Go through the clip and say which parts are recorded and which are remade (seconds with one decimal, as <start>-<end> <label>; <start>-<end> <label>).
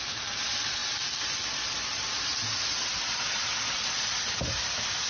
0.0-5.1 recorded